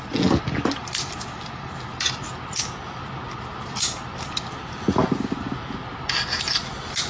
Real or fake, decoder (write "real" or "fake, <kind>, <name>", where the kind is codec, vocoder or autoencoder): real